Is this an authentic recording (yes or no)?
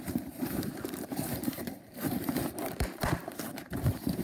no